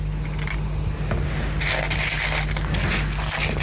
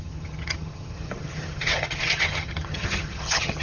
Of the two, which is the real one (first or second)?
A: first